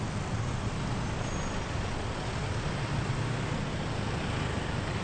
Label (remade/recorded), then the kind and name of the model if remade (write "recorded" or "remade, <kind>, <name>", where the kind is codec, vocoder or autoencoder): recorded